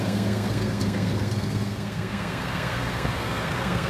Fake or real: fake